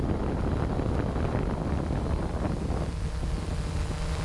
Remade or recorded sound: recorded